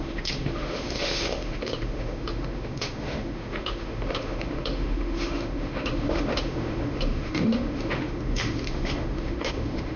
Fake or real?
fake